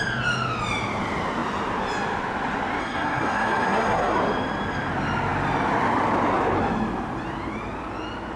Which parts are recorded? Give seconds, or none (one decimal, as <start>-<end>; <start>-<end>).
0.0-2.8; 4.2-8.4